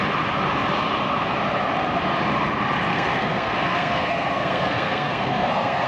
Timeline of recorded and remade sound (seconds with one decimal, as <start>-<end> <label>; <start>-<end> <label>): 0.0-2.9 recorded; 2.9-5.9 remade